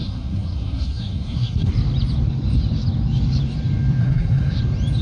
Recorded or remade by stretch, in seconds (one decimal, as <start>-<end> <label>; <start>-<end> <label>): 0.0-1.7 remade; 1.7-4.0 recorded; 4.0-4.6 remade; 4.6-5.0 recorded